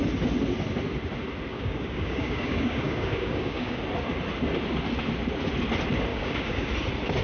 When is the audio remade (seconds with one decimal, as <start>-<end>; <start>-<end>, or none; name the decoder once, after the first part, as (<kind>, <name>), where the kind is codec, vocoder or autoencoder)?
1.5-3.8 (codec, DAC); 6.1-6.7